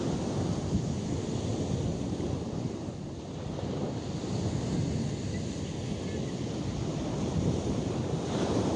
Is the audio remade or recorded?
recorded